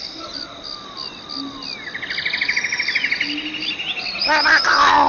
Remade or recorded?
recorded